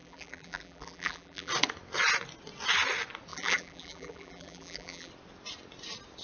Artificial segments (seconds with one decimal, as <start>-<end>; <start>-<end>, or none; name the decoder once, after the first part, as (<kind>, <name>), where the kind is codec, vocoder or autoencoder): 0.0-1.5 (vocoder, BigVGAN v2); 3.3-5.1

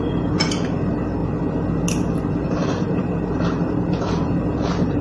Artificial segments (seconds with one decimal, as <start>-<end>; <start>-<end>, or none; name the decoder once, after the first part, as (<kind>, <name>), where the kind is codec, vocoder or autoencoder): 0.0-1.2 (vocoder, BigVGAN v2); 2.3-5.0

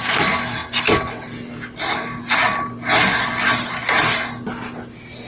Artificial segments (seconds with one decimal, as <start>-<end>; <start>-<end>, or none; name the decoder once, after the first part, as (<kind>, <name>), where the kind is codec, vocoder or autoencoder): none

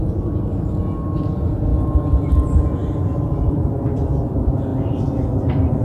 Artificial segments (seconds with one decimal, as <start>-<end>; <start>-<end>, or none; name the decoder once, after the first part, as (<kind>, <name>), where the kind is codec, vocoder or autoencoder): 2.8-4.1 (vocoder, BigVGAN v2); 4.7-5.8

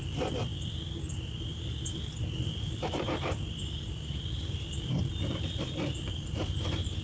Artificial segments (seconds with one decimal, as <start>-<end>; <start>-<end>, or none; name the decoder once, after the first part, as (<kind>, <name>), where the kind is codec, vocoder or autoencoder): 0.0-7.0 (vocoder, BigVGAN v2)

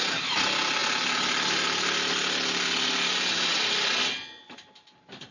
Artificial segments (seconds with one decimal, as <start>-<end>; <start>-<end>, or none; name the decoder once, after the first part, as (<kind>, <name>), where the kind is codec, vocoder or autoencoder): none

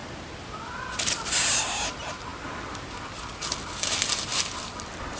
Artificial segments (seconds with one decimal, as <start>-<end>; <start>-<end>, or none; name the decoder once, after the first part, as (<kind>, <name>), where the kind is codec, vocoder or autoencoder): 2.3-3.8 (vocoder, BigVGAN v2); 4.3-5.2

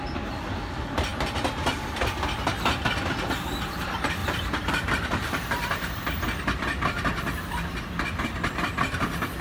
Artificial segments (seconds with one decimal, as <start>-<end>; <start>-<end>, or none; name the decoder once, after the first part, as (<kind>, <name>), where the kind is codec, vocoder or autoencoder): 4.2-6.1 (vocoder, BigVGAN v2)